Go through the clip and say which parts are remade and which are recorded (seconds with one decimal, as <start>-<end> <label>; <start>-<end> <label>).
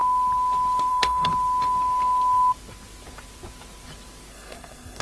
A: 0.0-0.9 recorded; 0.9-1.3 remade; 1.3-4.3 recorded; 4.3-5.0 remade